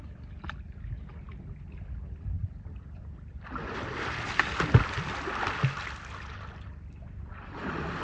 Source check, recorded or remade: recorded